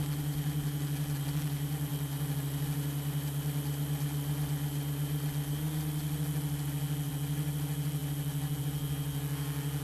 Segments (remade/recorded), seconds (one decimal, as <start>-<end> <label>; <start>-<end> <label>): 0.0-9.8 recorded